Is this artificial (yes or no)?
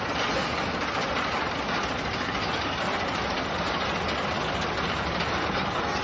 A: no